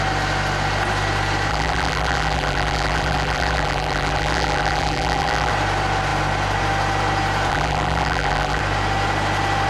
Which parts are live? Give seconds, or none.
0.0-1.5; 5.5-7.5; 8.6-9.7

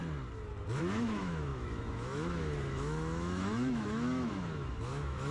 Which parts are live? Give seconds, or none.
0.0-0.8

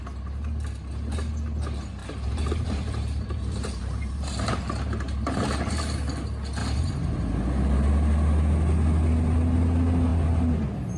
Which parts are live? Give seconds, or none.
0.0-2.0; 5.7-6.6; 7.9-11.0